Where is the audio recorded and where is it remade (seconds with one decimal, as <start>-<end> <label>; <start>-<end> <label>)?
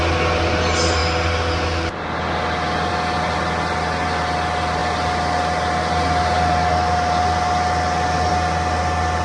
0.0-9.2 recorded